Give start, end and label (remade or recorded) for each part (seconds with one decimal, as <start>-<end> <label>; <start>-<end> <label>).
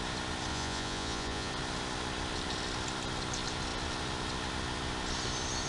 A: 0.0-0.5 recorded; 0.5-1.5 remade; 1.5-5.7 recorded